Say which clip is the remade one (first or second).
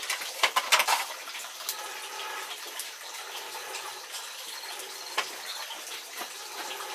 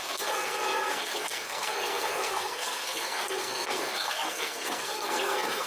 second